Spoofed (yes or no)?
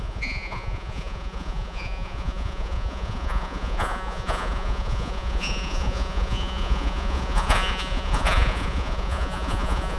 yes